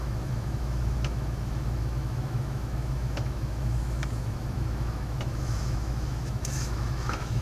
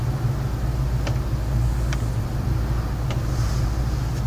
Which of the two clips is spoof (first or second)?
first